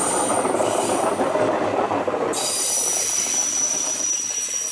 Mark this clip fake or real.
real